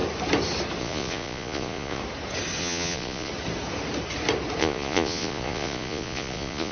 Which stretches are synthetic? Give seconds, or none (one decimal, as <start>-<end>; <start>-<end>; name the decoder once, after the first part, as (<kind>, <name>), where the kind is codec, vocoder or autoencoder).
0.8-2.0 (vocoder, Vocos); 2.6-3.3; 4.6-6.7